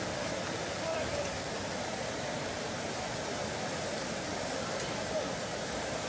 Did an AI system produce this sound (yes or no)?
no